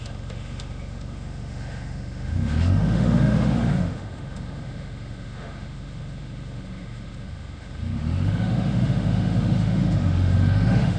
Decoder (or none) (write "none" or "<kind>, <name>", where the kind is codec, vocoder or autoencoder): autoencoder, DAC-VAE